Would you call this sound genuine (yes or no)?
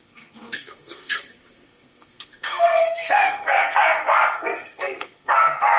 no